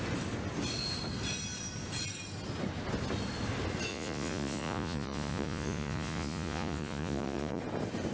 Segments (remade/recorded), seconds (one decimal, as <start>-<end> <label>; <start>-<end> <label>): 0.0-3.9 recorded; 3.9-7.6 remade; 7.6-8.1 recorded